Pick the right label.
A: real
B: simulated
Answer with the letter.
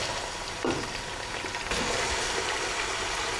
A